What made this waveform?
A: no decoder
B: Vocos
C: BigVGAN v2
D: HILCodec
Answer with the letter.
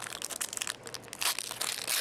A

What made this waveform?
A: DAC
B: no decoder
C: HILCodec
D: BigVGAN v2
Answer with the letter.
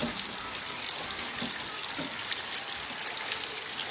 B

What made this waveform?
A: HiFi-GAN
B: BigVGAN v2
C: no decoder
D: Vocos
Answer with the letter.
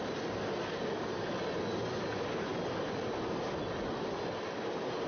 C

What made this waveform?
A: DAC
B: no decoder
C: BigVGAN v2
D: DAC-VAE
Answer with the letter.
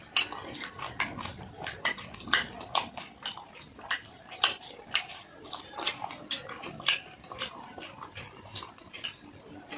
C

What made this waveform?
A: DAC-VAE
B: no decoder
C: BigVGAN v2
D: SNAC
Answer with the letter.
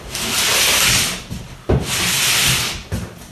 C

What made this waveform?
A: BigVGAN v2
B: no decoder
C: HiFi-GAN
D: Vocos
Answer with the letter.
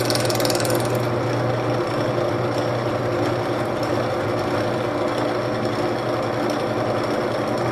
B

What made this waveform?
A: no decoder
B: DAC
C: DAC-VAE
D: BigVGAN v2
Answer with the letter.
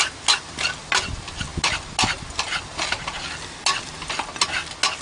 A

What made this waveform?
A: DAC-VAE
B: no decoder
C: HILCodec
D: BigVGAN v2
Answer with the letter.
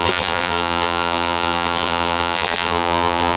D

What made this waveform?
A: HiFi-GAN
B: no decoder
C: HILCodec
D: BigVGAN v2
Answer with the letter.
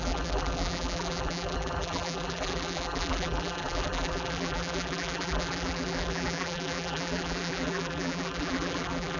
D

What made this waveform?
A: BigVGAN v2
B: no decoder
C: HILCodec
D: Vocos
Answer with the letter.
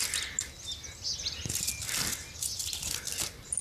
B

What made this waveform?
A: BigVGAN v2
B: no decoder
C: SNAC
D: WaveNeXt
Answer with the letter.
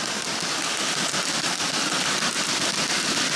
A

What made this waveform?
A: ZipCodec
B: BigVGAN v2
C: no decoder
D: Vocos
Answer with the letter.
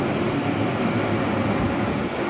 C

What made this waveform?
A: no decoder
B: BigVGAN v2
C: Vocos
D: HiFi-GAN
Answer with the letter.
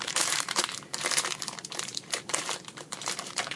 B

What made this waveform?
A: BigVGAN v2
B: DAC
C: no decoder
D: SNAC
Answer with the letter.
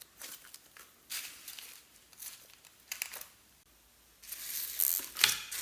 C